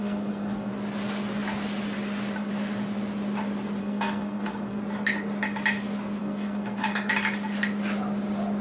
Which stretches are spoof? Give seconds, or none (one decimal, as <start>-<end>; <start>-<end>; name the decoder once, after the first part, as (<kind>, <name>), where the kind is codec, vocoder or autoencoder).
0.0-0.7 (codec, SNAC); 3.8-4.8; 6.2-7.1